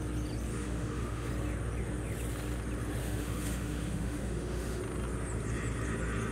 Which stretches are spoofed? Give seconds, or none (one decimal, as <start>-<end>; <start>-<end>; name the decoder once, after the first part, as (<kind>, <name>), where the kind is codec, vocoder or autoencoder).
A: 0.5-1.3 (autoencoder, DAC-VAE); 3.0-4.8